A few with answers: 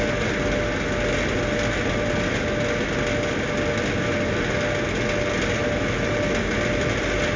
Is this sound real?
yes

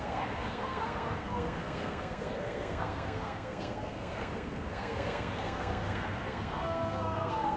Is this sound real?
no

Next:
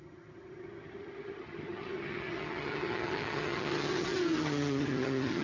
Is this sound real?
no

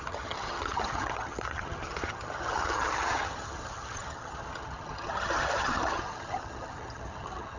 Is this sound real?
no